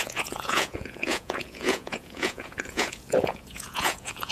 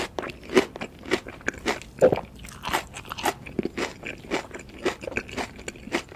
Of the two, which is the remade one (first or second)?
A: first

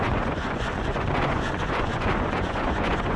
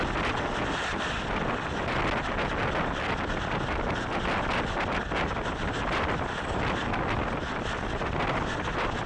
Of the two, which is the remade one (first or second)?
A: first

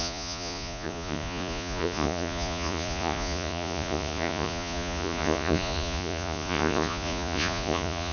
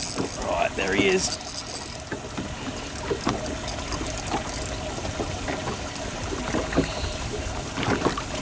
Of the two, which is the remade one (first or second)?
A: first